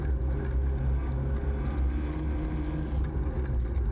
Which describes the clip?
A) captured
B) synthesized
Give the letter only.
A